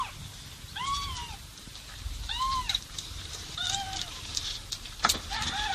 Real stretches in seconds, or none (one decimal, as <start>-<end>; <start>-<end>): none